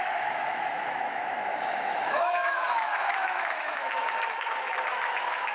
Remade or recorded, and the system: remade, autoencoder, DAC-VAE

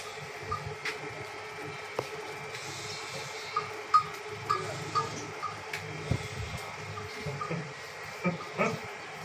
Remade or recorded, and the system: recorded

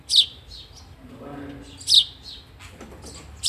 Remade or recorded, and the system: recorded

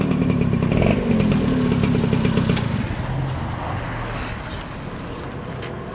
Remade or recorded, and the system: recorded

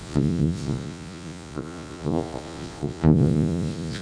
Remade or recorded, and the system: remade, vocoder, Vocos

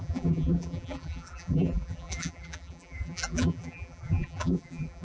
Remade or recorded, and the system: remade, vocoder, BigVGAN v2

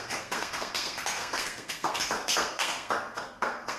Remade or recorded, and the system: remade, codec, SNAC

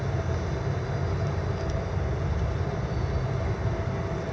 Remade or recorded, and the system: recorded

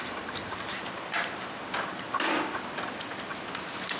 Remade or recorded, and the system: recorded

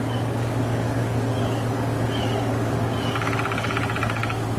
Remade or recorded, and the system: remade, codec, DAC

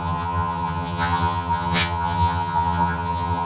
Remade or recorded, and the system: remade, vocoder, HiFi-GAN